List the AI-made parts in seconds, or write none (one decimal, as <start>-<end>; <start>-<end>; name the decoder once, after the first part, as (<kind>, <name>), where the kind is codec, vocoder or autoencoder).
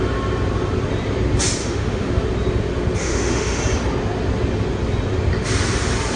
1.6-2.1 (autoencoder, DAC-VAE); 3.0-3.6